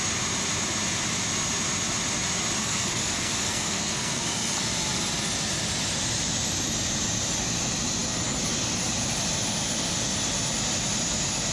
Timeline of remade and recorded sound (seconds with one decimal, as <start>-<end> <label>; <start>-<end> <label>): 0.0-2.6 recorded; 2.6-4.6 remade; 4.6-11.5 recorded